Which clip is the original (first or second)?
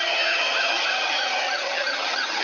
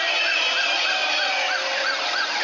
second